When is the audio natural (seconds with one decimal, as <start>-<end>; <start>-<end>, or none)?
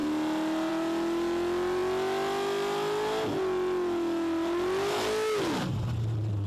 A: 0.0-6.5